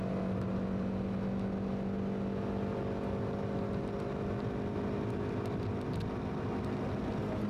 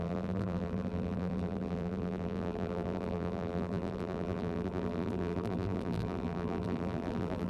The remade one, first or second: second